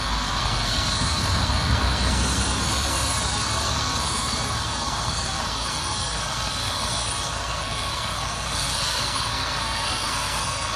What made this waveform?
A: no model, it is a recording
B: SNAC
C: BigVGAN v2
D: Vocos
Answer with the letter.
B